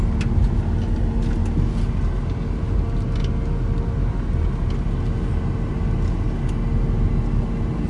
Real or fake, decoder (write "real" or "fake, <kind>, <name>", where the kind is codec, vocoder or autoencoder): real